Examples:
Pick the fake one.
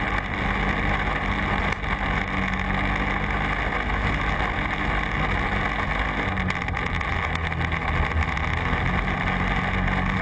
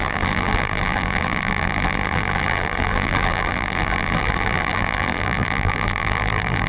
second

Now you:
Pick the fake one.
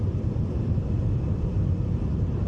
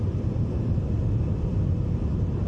first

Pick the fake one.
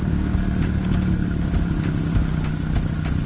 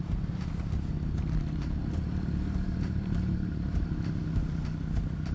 second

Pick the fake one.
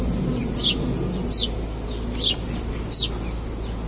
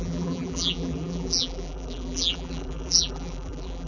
second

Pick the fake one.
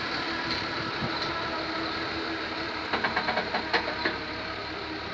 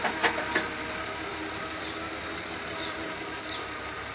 first